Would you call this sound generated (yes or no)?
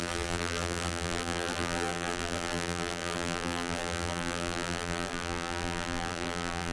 yes